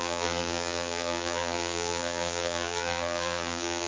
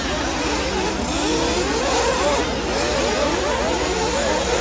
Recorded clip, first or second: second